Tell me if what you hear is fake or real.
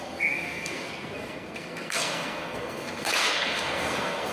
fake